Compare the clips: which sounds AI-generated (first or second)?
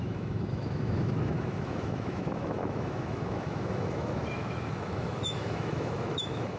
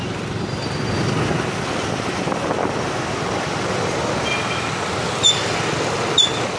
first